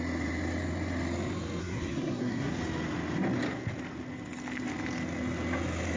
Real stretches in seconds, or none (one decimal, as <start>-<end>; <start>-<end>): 0.0-1.6; 2.5-6.0